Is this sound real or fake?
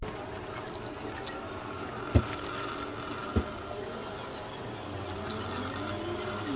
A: real